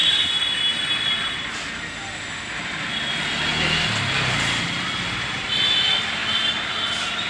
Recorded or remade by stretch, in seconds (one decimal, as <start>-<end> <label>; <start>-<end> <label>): 0.0-7.3 recorded